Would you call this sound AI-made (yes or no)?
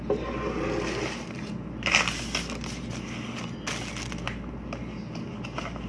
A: no